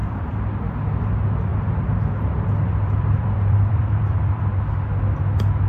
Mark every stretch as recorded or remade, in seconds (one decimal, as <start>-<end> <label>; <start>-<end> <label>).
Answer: 0.0-0.6 remade; 0.6-1.5 recorded; 1.5-4.4 remade; 4.4-5.7 recorded